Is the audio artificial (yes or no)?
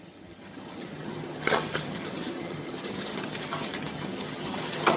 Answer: yes